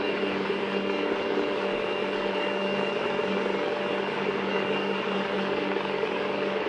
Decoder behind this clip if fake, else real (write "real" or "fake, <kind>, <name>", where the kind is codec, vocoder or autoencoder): fake, codec, DAC